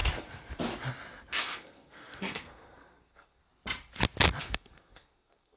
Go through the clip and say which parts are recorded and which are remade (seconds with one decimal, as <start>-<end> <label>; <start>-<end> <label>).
0.0-1.4 recorded; 1.4-3.4 remade; 3.4-4.4 recorded; 4.4-5.6 remade